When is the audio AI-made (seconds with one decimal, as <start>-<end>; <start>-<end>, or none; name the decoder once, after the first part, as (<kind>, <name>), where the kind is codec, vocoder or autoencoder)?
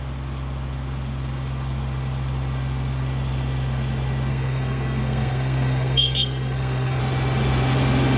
4.3-7.0 (codec, SNAC)